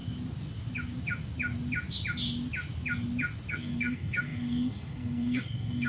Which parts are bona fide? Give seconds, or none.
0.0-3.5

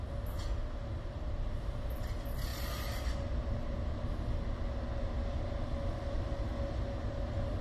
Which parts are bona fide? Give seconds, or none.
0.0-7.6

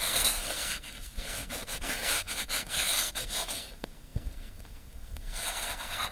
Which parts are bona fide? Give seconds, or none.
none

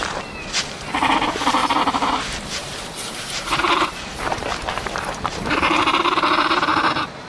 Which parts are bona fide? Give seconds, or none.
0.0-0.7; 6.7-7.3

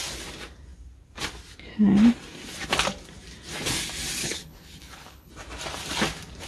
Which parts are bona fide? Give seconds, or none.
0.0-4.2; 5.3-6.5

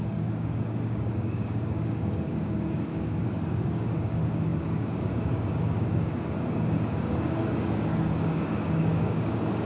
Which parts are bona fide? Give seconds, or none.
none

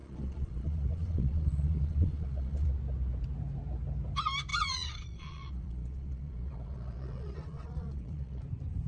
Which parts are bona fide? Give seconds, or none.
2.7-4.5; 8.4-8.9